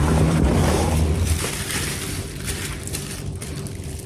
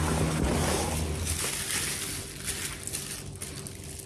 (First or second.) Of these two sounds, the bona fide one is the second